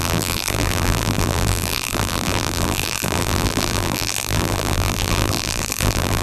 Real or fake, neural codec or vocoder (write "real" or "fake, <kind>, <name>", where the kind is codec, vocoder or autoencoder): fake, vocoder, BigVGAN v2